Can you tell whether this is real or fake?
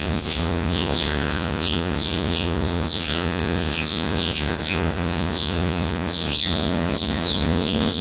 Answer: fake